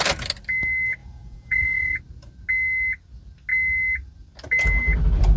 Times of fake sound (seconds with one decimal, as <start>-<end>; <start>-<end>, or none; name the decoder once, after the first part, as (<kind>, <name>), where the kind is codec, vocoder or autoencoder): 1.0-2.0 (vocoder, Vocos)